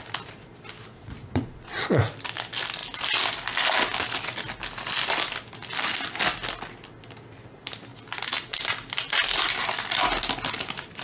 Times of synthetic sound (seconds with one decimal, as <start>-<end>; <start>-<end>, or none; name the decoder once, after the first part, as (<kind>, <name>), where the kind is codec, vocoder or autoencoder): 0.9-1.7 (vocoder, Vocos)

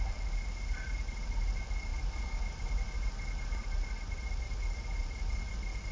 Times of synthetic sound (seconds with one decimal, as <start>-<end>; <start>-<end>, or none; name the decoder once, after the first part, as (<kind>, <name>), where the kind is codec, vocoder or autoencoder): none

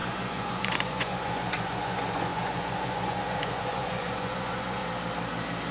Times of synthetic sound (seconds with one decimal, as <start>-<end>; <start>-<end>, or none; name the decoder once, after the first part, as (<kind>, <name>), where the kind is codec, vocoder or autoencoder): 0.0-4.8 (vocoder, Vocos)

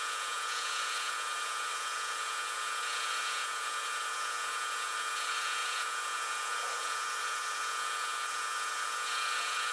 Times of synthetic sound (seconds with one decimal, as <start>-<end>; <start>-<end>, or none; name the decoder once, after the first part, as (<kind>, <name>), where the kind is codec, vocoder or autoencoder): 0.0-9.7 (vocoder, Vocos)

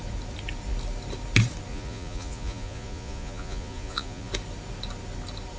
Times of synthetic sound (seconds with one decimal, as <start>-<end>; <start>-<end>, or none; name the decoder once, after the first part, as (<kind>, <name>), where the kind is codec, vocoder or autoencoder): 1.7-4.3 (vocoder, Vocos)

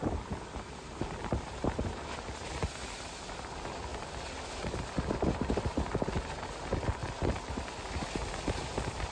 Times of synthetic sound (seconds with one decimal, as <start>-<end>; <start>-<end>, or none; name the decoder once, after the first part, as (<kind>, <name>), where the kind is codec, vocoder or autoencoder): none